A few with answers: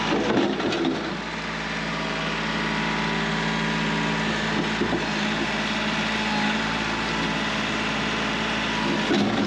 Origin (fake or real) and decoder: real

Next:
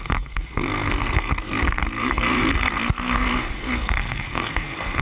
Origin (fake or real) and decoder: fake, codec, SNAC